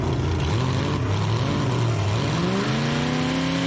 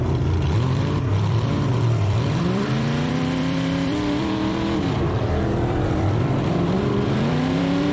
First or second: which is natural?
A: first